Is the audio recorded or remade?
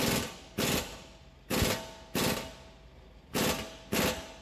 recorded